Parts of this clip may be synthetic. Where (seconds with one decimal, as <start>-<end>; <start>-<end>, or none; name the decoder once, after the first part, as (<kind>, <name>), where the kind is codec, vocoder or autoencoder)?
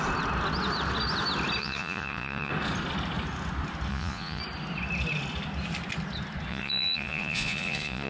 1.6-2.5 (vocoder, Vocos); 3.9-4.4; 6.5-8.1